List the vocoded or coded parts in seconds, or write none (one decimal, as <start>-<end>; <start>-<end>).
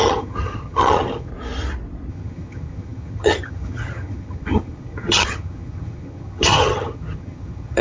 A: 0.0-1.3; 2.1-7.8